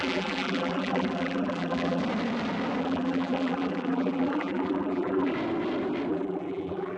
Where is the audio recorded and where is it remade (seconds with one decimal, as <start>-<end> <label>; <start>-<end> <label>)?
0.0-2.0 remade; 2.0-2.8 recorded; 2.8-5.3 remade; 5.3-6.1 recorded; 6.1-7.0 remade